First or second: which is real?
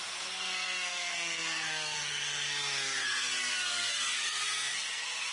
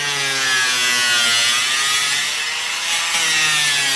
second